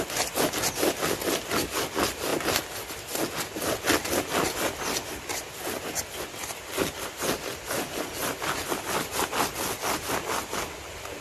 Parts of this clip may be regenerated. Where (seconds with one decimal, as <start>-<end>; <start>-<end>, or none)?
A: none